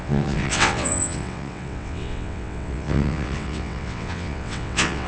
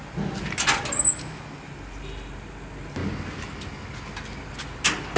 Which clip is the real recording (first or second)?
second